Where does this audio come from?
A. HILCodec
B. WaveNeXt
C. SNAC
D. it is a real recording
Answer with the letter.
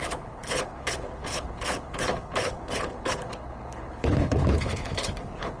A